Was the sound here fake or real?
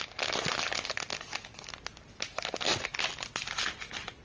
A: real